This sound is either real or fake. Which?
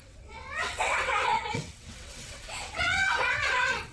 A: fake